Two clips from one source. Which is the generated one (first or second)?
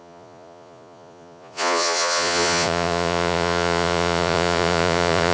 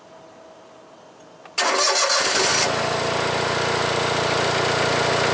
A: first